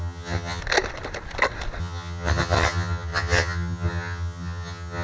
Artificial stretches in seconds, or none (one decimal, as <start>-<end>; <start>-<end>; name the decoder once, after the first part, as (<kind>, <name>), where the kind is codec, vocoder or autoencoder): 0.0-0.6 (vocoder, HiFi-GAN); 1.8-5.0